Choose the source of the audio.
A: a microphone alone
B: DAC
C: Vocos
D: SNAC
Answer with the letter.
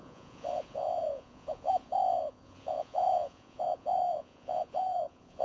C